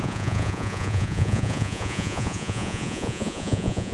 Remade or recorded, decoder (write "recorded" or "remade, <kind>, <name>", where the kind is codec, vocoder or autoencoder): remade, vocoder, Vocos